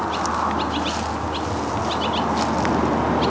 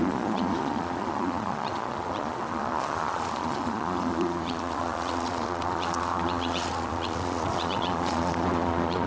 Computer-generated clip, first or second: second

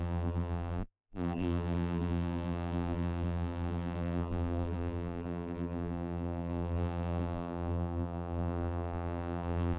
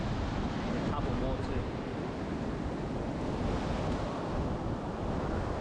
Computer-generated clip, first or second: first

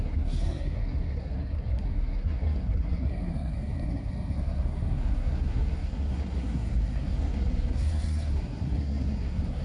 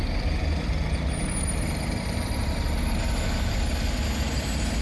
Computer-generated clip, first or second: first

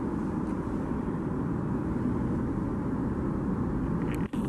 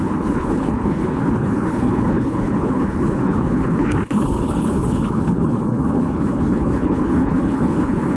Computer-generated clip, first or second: second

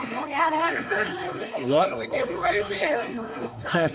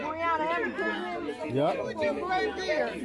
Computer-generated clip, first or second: first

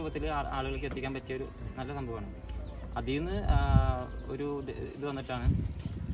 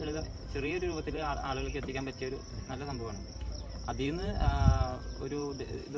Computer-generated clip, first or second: second